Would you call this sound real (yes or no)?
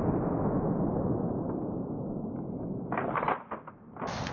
yes